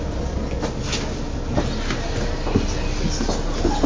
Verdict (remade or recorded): recorded